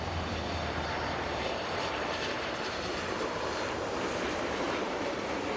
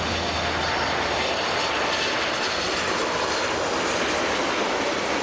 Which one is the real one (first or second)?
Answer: second